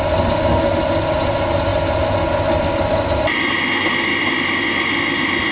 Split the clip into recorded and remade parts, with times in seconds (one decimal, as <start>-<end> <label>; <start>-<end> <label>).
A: 0.0-5.5 recorded